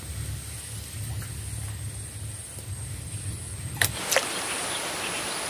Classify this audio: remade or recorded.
recorded